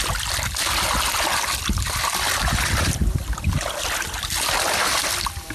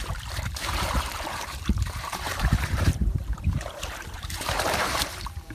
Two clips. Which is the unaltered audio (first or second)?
first